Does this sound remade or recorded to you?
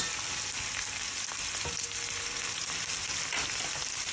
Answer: recorded